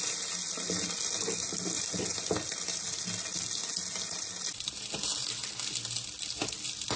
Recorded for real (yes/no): yes